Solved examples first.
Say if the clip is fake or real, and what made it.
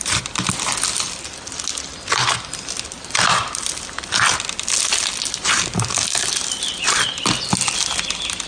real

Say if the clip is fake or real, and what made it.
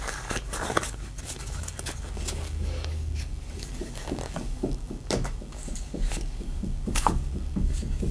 fake, codec, DAC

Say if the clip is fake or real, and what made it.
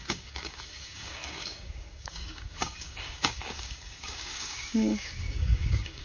fake, codec, DAC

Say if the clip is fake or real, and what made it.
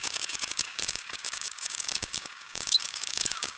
fake, codec, DAC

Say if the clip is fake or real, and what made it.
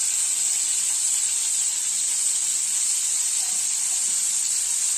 real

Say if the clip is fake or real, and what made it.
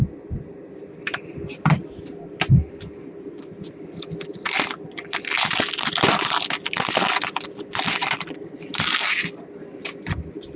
real